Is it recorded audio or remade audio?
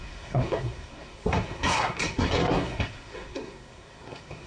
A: remade